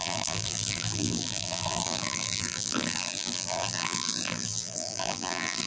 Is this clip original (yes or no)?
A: no